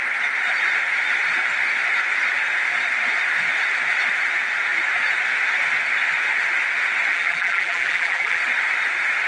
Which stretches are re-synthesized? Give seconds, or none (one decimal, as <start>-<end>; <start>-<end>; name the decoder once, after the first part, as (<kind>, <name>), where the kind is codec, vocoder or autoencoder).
7.1-8.4 (vocoder, BigVGAN v2)